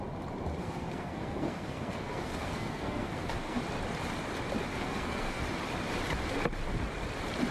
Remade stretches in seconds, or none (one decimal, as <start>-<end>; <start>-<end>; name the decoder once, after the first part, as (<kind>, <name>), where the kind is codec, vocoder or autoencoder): 0.6-3.6 (codec, SNAC); 4.7-5.4